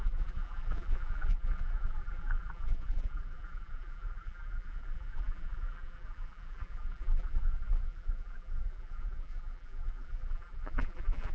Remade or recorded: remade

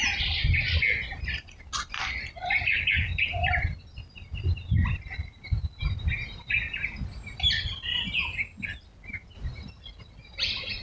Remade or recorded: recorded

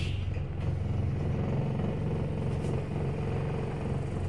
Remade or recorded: recorded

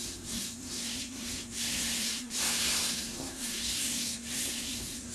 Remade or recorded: remade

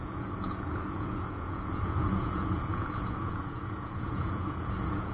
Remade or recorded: remade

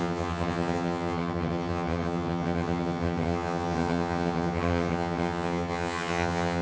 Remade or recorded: remade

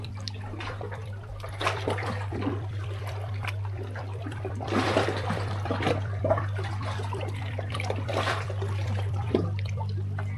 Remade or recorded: remade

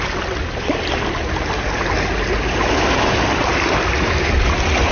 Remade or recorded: recorded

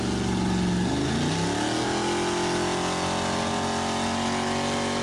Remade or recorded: recorded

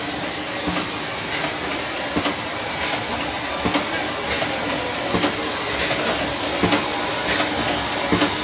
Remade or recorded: recorded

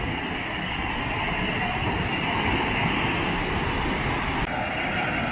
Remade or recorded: recorded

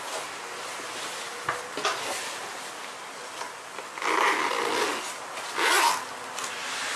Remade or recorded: recorded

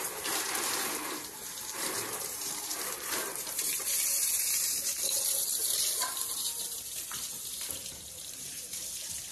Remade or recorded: remade